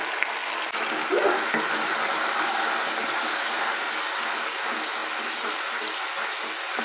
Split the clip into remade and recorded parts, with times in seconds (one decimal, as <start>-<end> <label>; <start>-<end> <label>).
0.0-6.8 recorded